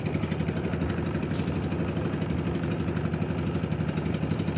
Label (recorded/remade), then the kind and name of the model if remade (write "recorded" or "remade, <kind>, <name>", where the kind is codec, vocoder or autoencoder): recorded